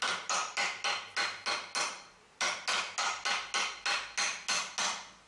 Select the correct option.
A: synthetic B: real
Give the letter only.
B